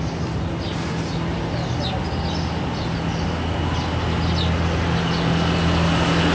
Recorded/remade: recorded